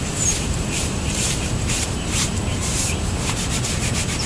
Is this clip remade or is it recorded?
remade